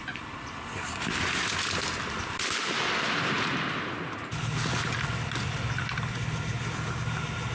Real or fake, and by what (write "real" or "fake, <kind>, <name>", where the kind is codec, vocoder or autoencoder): real